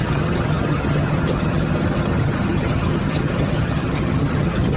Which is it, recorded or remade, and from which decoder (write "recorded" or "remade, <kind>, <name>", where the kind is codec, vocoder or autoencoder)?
remade, vocoder, HiFi-GAN